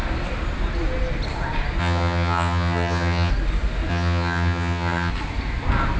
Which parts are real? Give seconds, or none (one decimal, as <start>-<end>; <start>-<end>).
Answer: 0.0-1.8; 3.3-3.9; 5.1-6.0